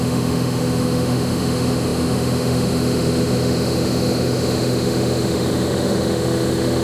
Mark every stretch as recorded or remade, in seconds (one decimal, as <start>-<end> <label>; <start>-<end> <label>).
0.0-6.8 remade